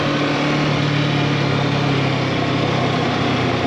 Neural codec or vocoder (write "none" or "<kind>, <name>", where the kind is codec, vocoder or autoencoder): none